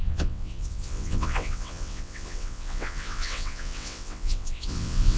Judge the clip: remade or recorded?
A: remade